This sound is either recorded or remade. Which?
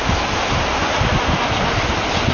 recorded